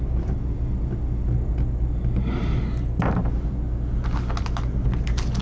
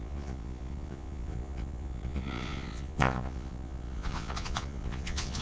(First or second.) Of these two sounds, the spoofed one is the second